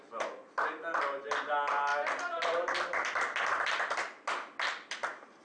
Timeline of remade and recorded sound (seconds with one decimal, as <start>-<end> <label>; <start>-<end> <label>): 0.0-5.4 recorded